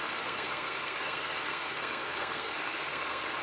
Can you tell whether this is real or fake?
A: fake